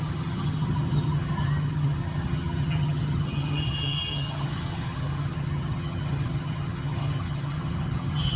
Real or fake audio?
fake